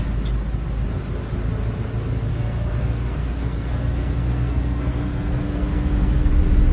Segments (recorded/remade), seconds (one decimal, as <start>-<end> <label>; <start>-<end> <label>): 0.0-2.3 recorded; 2.3-6.3 remade; 6.3-6.7 recorded

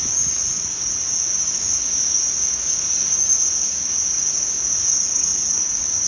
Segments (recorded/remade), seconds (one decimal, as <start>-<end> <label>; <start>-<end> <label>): 0.0-6.1 remade